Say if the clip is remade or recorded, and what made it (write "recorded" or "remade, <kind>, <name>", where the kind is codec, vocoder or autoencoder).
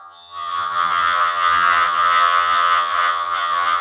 remade, vocoder, HiFi-GAN